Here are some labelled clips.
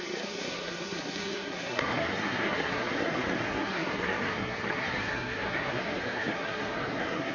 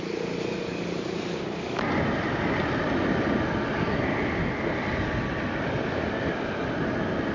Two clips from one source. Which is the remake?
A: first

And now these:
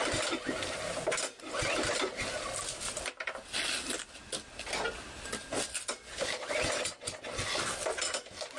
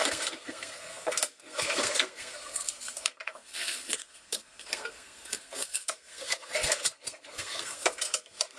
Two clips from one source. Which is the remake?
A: second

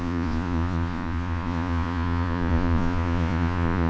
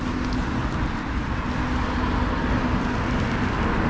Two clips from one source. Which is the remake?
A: first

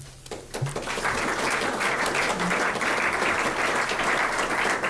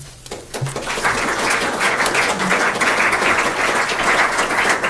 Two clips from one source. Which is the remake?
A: second